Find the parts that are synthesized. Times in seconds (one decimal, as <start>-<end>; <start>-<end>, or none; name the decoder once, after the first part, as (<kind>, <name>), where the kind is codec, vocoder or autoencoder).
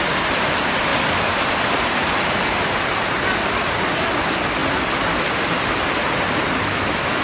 0.9-2.4 (vocoder, BigVGAN v2); 4.6-5.9